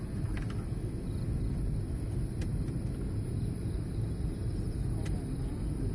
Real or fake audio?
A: real